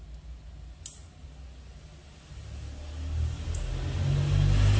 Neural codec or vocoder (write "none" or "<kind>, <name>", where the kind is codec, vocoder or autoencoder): none